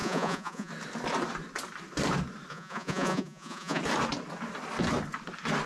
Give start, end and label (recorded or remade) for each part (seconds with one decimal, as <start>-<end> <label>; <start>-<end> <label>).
0.0-0.7 remade; 0.7-2.5 recorded; 2.5-3.8 remade; 3.8-5.7 recorded